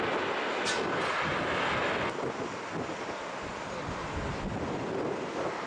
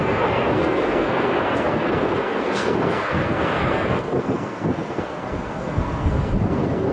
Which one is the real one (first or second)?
first